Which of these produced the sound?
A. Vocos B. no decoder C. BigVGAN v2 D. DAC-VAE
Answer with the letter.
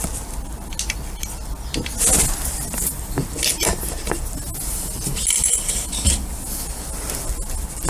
B